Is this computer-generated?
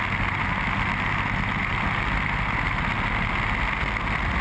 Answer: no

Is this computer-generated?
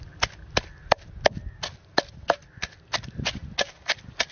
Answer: no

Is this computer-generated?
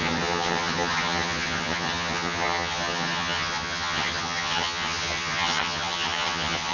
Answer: yes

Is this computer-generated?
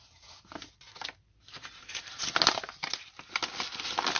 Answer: no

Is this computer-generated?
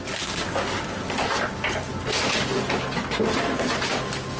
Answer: no